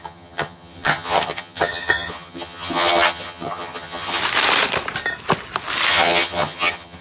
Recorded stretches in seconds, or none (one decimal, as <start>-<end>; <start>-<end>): 4.2-5.9